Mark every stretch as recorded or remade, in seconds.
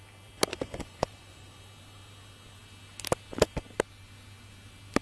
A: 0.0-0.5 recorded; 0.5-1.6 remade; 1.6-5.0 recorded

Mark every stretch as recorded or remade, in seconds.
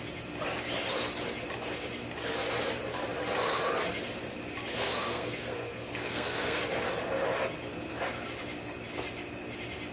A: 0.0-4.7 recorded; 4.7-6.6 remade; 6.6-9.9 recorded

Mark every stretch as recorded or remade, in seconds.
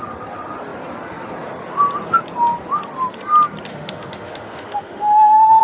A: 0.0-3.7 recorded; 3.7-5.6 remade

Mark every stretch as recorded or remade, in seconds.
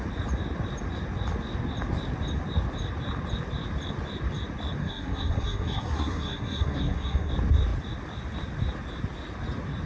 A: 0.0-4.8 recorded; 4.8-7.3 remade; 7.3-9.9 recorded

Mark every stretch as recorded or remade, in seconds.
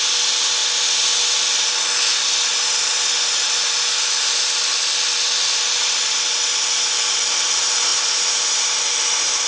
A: 0.0-9.5 recorded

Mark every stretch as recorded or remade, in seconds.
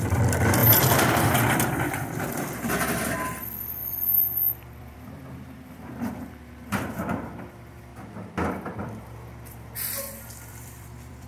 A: 0.0-7.9 remade; 7.9-8.5 recorded; 8.5-11.3 remade